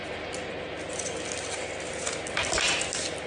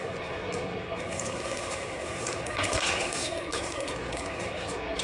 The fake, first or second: second